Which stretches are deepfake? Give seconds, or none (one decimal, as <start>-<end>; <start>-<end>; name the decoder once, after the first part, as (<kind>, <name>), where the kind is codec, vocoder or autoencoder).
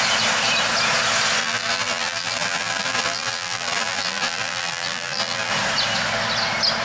1.4-5.5 (vocoder, BigVGAN v2)